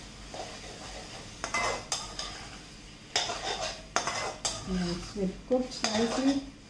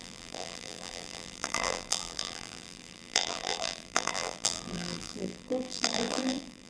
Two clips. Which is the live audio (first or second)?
first